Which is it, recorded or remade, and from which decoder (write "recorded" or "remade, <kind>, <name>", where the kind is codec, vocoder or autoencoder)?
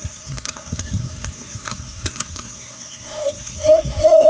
remade, codec, SNAC